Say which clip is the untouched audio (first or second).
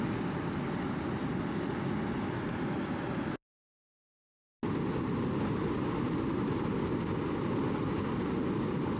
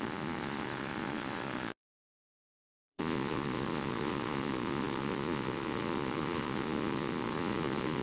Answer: first